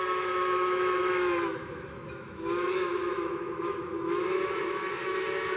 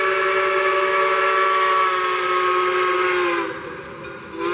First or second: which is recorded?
second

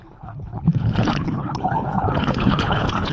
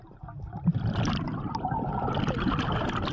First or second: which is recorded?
second